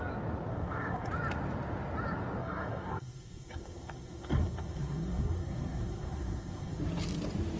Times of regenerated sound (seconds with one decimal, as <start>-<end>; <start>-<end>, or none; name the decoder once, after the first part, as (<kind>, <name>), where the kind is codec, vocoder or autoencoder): 0.5-1.1 (codec, SNAC); 2.4-6.8